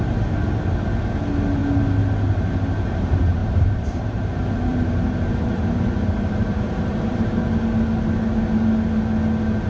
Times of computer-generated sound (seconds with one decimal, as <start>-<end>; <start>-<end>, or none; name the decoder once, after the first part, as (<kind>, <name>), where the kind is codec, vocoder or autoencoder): 3.4-4.2 (vocoder, BigVGAN v2); 4.7-7.4